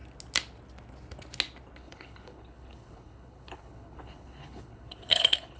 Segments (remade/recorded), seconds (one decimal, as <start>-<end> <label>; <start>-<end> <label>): 0.0-1.8 recorded; 1.8-5.6 remade

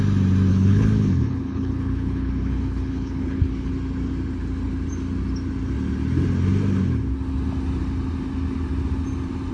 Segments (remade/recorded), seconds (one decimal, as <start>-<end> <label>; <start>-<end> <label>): 0.0-0.5 recorded; 0.5-3.7 remade; 3.7-9.5 recorded

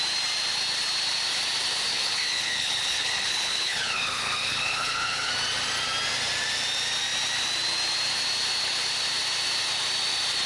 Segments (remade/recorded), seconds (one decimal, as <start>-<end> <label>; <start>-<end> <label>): 0.0-1.9 recorded; 1.9-5.3 remade; 5.3-10.5 recorded

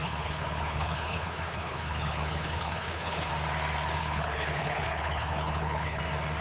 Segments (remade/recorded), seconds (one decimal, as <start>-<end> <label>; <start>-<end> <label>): 0.0-3.3 remade; 3.3-4.0 recorded; 4.0-6.0 remade; 6.0-6.4 recorded

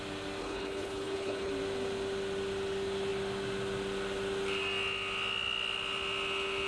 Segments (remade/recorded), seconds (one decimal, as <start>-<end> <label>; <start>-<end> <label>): 0.0-0.4 recorded; 0.4-1.5 remade; 1.5-6.7 recorded

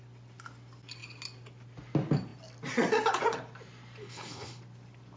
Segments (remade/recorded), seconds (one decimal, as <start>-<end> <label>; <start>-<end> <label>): 0.0-4.0 recorded; 4.0-4.6 remade; 4.6-5.2 recorded

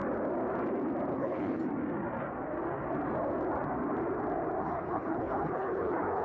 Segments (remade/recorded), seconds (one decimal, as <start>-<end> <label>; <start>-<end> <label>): 0.0-1.1 recorded; 1.1-1.6 remade; 1.6-4.6 recorded; 4.6-6.2 remade

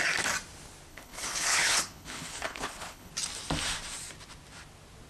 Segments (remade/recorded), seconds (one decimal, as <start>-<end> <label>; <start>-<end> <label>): 0.0-0.9 recorded; 0.9-3.1 remade; 3.1-5.1 recorded